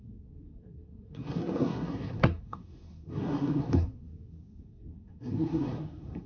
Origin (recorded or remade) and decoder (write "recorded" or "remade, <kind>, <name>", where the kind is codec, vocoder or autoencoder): remade, codec, SNAC